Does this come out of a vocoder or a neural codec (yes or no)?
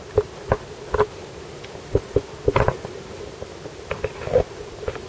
no